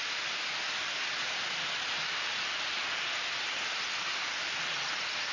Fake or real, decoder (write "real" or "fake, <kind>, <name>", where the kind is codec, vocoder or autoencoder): real